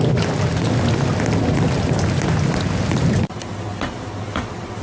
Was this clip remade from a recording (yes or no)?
no